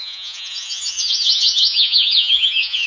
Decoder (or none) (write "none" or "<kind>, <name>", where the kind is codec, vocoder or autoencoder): vocoder, Vocos